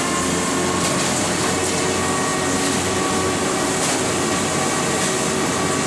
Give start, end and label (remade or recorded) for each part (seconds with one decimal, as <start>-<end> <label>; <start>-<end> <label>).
0.0-5.9 recorded